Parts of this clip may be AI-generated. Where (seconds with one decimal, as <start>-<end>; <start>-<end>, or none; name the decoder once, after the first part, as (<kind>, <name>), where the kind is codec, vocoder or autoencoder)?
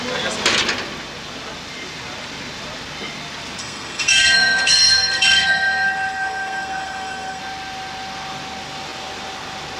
3.6-7.4 (codec, SNAC)